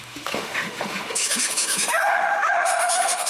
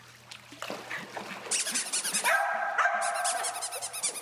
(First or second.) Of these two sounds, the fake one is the first